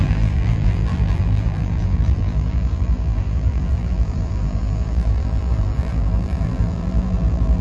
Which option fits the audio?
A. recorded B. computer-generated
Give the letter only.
B